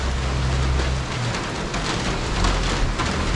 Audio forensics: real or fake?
real